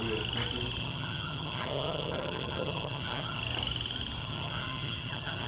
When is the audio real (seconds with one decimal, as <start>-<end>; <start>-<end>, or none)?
0.0-0.8; 3.4-4.2